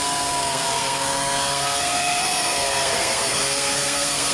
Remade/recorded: remade